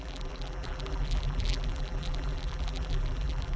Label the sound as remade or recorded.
remade